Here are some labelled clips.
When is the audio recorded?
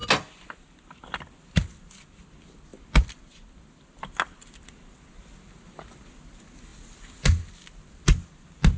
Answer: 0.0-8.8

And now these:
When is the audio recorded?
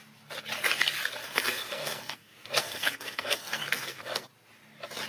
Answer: 0.0-1.2; 4.3-5.1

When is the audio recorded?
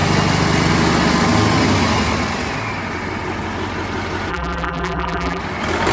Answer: 0.0-4.3; 5.4-5.9